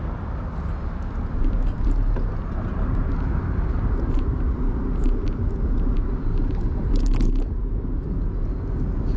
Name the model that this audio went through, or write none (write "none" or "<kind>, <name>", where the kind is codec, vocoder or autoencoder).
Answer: none